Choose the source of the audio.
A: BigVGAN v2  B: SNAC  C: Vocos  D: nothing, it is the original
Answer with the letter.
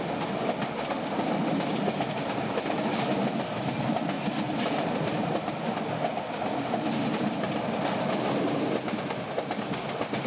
D